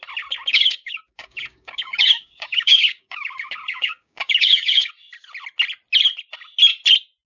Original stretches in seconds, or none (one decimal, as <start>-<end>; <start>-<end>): 0.0-0.5; 4.9-7.3